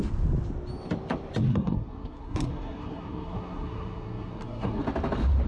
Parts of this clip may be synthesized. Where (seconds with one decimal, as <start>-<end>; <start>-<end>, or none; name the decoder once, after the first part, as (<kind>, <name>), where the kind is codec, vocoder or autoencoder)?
1.5-4.8 (codec, SNAC)